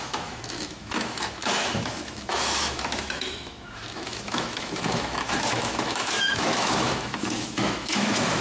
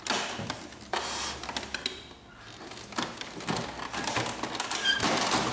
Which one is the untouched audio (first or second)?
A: second